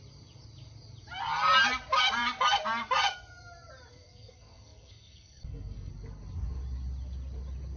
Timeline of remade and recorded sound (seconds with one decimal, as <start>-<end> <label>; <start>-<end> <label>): 0.0-3.9 recorded; 3.9-5.9 remade; 5.9-7.8 recorded